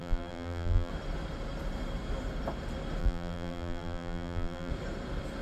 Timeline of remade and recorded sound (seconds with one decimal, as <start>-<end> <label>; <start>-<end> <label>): 0.0-0.9 remade; 0.9-3.0 recorded; 3.0-4.7 remade; 4.7-5.4 recorded